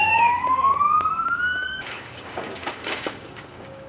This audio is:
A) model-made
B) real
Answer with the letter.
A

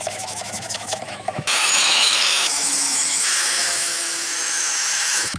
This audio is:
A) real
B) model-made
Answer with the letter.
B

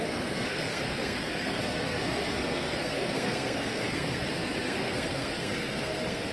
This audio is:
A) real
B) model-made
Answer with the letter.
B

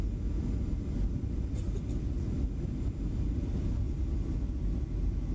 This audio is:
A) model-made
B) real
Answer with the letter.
B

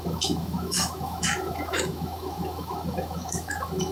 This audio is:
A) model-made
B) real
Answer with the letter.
A